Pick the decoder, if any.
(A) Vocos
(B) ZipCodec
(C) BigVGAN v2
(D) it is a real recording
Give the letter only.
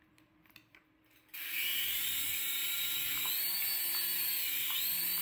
D